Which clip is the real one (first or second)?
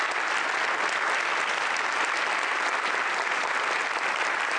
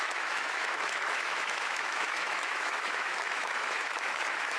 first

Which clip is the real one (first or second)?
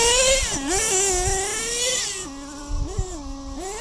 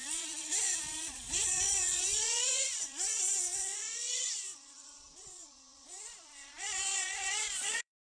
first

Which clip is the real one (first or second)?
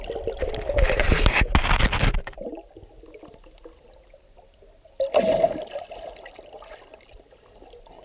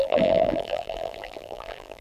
first